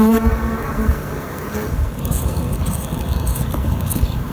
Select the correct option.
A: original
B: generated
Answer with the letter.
B